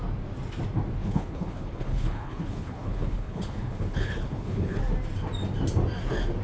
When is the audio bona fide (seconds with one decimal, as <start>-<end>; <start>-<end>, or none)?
0.0-1.0; 4.8-6.4